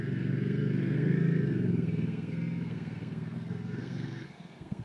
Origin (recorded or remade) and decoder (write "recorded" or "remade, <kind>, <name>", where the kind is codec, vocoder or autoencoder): remade, codec, SNAC